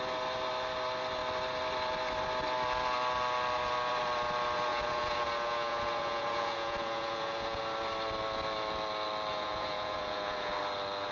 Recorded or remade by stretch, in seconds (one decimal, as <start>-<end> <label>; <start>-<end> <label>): 0.0-4.7 recorded; 4.7-7.6 remade; 7.6-9.3 recorded; 9.3-10.5 remade; 10.5-11.1 recorded